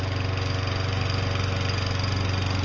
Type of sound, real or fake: real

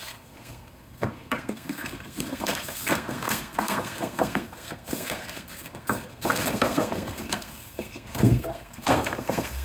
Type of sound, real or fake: fake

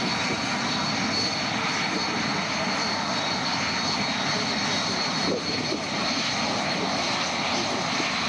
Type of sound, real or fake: real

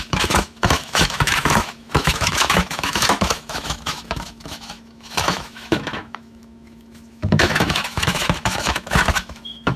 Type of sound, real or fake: fake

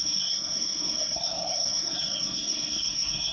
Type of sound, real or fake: fake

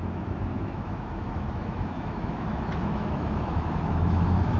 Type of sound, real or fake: fake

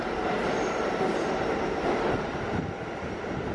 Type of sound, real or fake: real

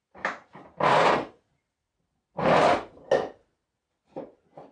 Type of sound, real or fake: real